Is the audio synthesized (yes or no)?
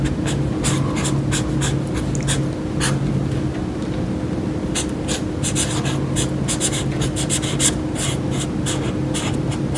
no